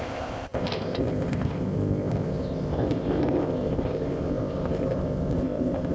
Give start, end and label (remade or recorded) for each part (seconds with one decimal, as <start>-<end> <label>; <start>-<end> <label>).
0.0-5.9 remade